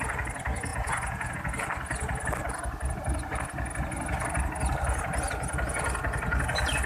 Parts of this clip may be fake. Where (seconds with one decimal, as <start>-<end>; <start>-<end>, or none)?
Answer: 0.7-1.3

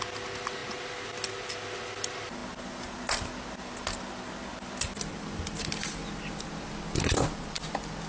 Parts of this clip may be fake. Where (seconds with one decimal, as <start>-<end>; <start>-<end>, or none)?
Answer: none

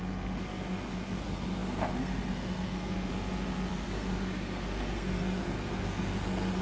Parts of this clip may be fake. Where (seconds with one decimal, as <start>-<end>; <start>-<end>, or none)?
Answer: 0.0-3.1; 3.7-6.6

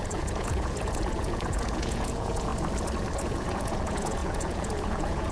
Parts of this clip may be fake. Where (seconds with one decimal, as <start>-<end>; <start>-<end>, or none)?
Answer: 0.0-2.5; 3.2-5.3

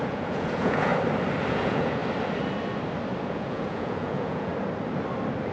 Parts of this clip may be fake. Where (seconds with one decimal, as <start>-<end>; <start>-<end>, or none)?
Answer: 0.0-0.9; 1.5-2.0; 3.2-4.5

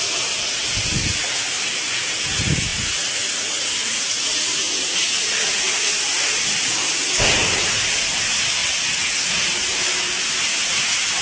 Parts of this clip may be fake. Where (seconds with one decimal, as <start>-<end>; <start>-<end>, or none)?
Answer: 8.6-9.1

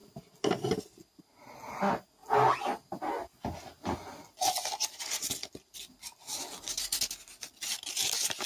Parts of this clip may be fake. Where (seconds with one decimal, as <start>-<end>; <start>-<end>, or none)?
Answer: none